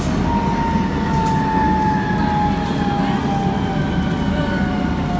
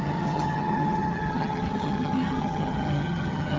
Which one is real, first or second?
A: first